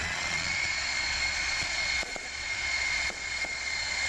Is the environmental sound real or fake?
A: fake